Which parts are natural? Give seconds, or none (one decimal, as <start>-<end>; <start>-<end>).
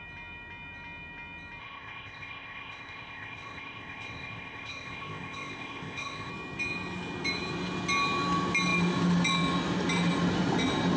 0.0-1.6; 6.3-11.0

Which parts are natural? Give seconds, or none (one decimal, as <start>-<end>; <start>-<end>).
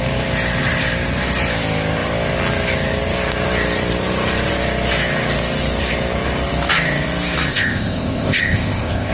0.0-7.5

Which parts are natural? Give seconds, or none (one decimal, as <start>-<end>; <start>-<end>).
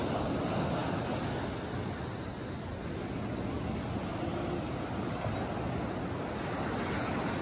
0.0-7.4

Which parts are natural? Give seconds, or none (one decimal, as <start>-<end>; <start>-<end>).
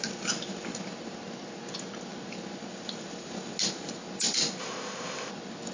0.0-4.6; 5.3-5.7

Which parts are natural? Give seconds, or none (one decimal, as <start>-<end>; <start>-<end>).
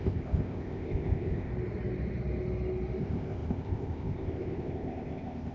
1.5-3.0